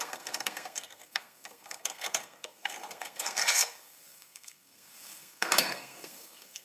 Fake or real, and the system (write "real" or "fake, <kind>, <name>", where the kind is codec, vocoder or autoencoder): fake, codec, SNAC